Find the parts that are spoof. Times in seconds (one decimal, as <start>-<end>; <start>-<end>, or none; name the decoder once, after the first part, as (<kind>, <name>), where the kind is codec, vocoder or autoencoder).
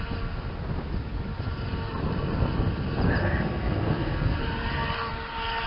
3.2-4.4 (codec, SNAC)